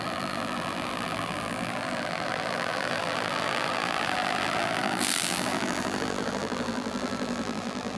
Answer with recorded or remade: remade